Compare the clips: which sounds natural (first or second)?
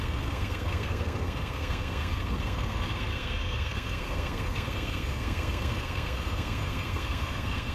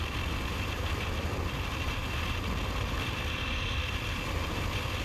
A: second